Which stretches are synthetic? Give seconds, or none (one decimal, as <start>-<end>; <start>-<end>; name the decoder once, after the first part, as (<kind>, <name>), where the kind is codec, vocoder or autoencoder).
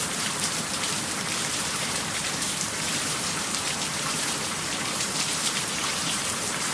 0.0-0.7 (vocoder, BigVGAN v2); 1.5-6.7